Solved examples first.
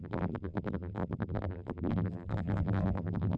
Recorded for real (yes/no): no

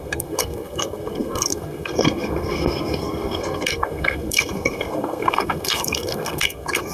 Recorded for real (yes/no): no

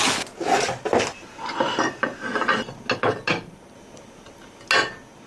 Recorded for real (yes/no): yes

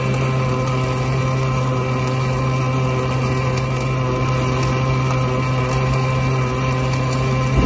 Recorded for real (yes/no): yes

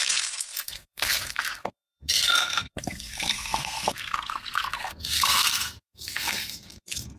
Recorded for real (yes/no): no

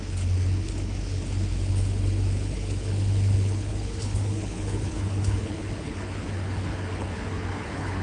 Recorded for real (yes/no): no